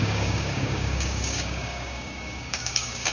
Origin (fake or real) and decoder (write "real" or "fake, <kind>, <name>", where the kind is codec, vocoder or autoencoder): fake, codec, DAC